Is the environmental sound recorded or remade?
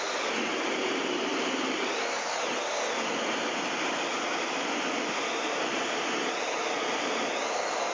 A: recorded